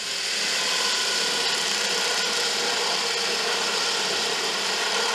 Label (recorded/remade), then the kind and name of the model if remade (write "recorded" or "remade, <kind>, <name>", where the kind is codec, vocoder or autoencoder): recorded